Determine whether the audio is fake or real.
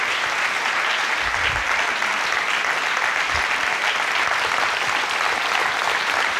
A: real